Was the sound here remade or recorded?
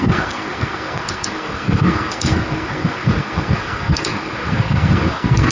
remade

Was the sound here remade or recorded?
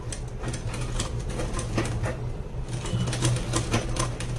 recorded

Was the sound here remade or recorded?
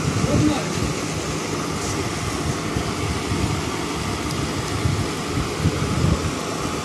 recorded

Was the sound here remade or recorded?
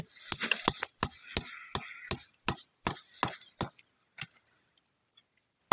recorded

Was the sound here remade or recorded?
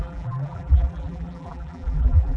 remade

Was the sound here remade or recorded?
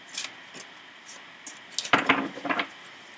recorded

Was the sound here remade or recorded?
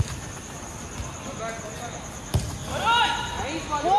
recorded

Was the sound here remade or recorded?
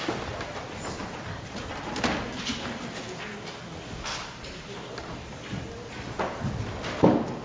recorded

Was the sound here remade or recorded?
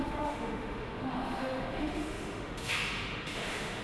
remade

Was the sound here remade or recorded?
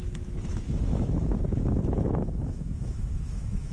remade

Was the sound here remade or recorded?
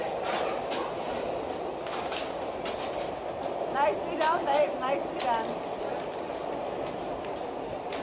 recorded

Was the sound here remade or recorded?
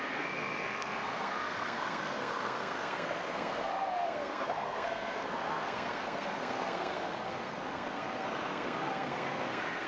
remade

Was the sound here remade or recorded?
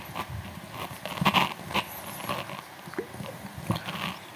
recorded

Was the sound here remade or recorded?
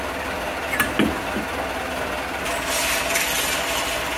recorded